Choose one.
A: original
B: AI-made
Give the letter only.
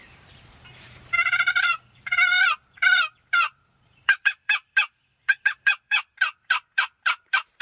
B